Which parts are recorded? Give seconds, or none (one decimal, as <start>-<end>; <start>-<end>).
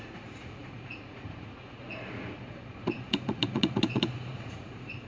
none